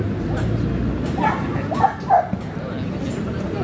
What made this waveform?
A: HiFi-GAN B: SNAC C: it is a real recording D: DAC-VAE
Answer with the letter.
C